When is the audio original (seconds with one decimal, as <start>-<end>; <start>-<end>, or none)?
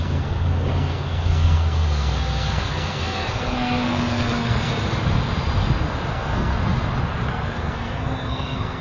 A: 4.7-6.1; 6.5-7.3